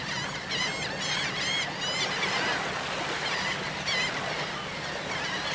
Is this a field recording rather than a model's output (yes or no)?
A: yes